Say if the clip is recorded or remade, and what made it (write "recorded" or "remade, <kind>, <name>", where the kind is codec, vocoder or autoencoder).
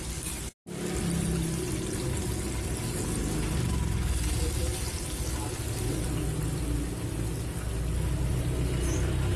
recorded